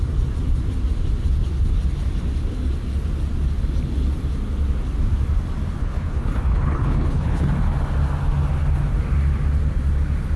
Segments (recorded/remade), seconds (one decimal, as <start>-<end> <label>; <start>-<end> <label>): 0.0-5.8 recorded; 5.8-7.5 remade; 7.5-10.4 recorded